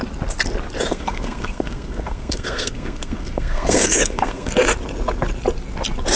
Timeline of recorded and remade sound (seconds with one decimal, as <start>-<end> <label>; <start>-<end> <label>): 0.0-0.9 recorded; 0.9-4.5 remade; 4.5-6.2 recorded